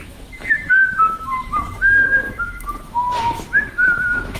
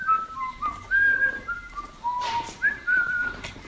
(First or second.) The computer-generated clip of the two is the first